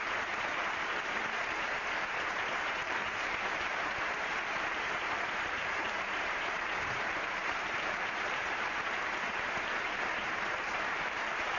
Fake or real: fake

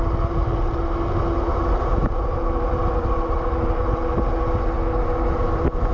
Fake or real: real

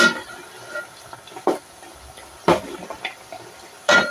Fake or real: fake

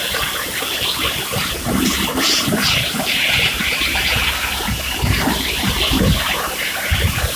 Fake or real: fake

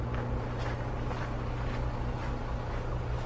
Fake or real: real